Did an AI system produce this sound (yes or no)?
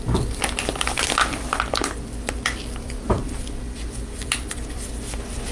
yes